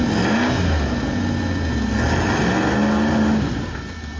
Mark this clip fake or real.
real